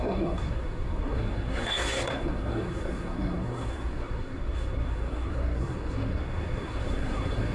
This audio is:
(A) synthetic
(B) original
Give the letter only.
A